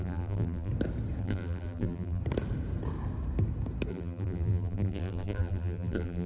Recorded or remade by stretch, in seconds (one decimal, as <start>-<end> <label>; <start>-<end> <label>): 0.0-0.7 remade; 0.7-1.2 recorded; 1.2-2.2 remade; 2.2-3.9 recorded; 3.9-6.3 remade